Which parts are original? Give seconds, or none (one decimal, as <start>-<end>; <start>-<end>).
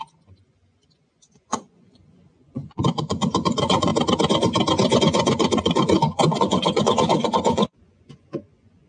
3.9-5.0